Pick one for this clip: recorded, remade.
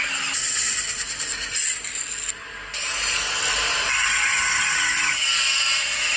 recorded